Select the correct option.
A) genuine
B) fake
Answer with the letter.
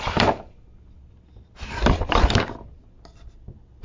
A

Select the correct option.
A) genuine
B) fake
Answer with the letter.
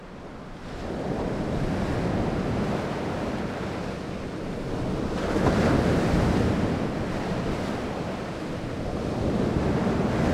A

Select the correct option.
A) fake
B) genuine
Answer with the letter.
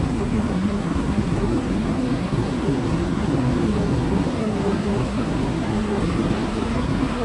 A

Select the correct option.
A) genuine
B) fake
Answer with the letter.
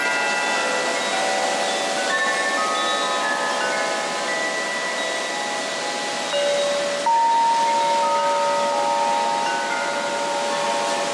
A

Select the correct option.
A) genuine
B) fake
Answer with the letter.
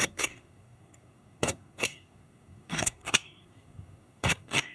B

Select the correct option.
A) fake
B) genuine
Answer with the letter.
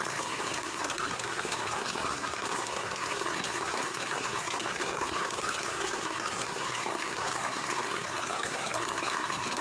A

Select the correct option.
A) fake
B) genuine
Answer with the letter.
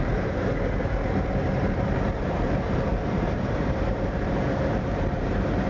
A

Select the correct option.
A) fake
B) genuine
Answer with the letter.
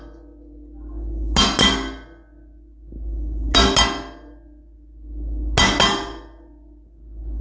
B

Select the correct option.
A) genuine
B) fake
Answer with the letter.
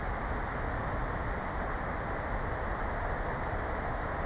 A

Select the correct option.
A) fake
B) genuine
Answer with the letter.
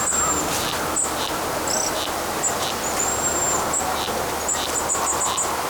B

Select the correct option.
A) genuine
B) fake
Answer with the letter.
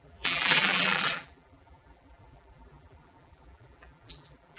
B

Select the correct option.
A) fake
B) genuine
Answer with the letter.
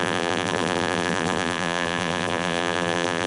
A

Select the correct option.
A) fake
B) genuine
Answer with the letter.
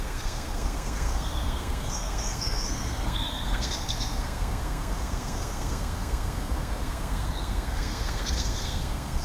A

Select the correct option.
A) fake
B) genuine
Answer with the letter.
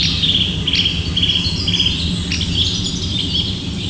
B